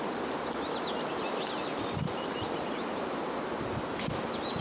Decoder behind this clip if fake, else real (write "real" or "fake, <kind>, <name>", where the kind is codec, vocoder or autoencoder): real